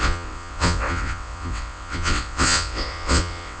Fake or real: fake